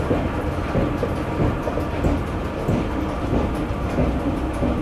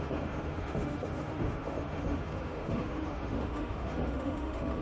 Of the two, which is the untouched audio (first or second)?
first